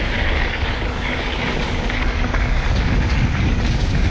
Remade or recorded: remade